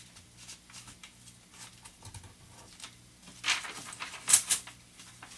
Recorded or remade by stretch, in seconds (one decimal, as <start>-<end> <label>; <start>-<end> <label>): 0.0-5.4 recorded